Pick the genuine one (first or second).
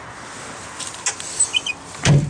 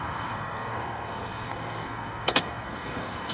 first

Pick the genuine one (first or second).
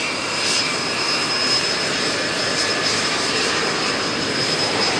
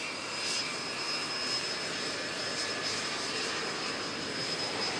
second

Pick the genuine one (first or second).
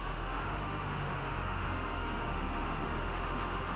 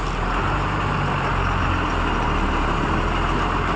second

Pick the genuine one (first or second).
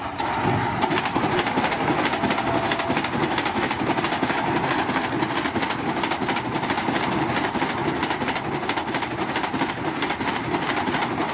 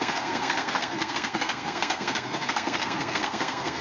first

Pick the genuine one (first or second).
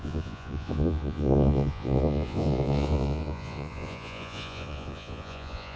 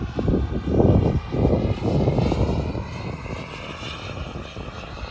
second